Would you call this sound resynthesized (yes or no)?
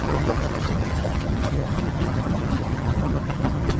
yes